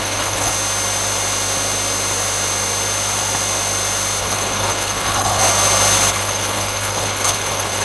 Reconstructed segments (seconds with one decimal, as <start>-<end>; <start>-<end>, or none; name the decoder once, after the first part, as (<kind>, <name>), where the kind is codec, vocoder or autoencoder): 0.0-0.5 (codec, HILCodec); 4.2-5.4; 6.1-7.8